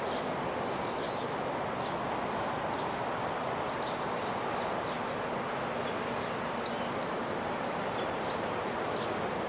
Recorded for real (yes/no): yes